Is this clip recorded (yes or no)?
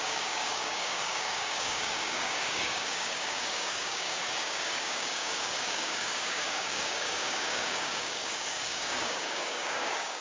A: no